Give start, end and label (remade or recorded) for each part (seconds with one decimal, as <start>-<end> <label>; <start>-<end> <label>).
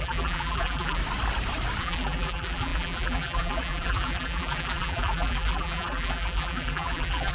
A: 0.0-1.0 remade; 1.0-1.8 recorded; 1.8-7.3 remade